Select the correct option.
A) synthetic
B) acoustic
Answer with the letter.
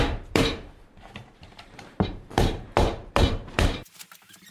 A